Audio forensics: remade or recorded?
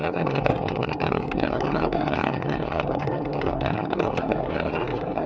remade